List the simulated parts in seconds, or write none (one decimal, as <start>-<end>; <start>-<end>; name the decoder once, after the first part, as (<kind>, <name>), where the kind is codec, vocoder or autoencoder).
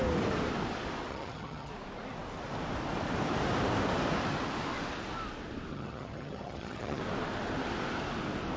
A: 1.1-1.7 (vocoder, HiFi-GAN); 5.7-7.0